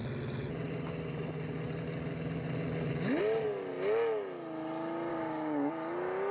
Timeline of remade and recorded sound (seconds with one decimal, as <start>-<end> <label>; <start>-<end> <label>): 0.0-5.1 recorded; 5.1-5.7 remade; 5.7-6.3 recorded